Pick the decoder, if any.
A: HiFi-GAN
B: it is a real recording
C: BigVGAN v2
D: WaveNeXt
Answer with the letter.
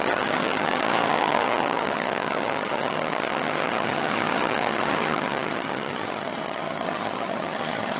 A